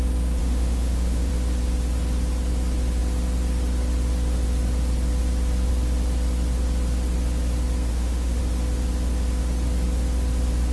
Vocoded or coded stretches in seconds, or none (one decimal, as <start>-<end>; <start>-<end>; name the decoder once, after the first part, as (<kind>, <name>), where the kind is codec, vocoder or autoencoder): 0.4-1.3 (autoencoder, DAC-VAE); 7.9-8.4